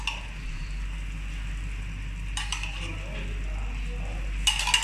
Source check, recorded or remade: recorded